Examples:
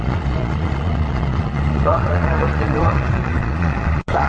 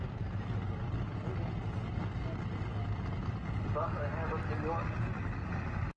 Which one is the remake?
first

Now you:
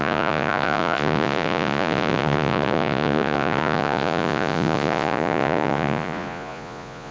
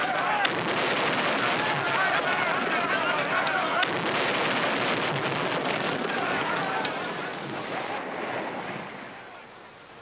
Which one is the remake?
first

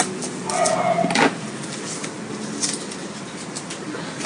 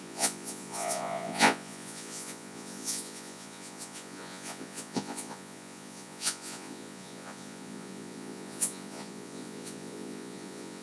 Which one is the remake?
second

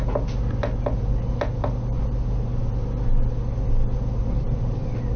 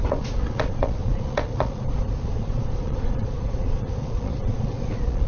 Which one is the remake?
second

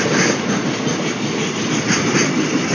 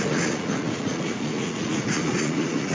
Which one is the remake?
second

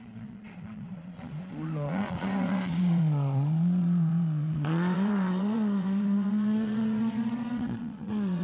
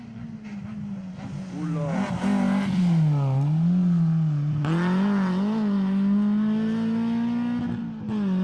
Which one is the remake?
first